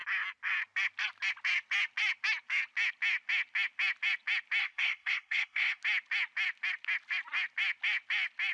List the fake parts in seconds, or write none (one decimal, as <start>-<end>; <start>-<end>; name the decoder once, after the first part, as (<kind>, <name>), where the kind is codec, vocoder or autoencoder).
4.6-5.8 (codec, SNAC)

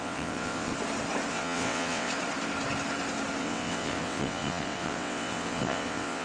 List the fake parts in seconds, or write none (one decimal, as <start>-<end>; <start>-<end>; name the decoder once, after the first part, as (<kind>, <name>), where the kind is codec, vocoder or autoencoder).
0.0-0.7 (vocoder, WaveNeXt); 1.3-2.1; 3.4-6.2

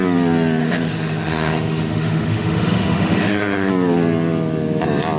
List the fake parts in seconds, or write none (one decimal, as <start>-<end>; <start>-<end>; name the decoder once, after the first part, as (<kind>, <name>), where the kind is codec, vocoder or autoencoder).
0.6-3.7 (autoencoder, DAC-VAE)

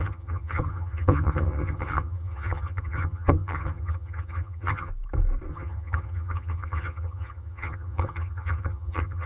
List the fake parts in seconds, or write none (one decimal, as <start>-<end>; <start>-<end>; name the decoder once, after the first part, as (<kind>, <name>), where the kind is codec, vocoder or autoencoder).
0.0-4.9 (vocoder, HiFi-GAN); 5.5-9.3

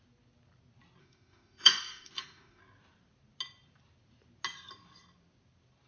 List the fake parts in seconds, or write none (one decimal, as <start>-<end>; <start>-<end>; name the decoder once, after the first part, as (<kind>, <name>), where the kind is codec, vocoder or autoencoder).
1.0-2.6 (autoencoder, DAC-VAE)

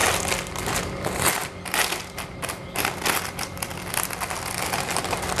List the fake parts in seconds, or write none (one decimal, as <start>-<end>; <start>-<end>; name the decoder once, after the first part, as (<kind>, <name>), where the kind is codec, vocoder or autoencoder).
none

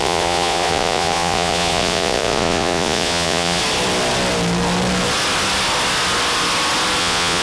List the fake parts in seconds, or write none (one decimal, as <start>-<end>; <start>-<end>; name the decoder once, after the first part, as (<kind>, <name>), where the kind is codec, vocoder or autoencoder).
0.0-3.6 (vocoder, Vocos); 7.0-7.4